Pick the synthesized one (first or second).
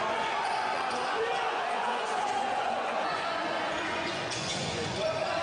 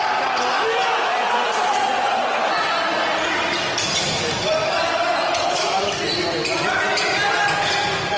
first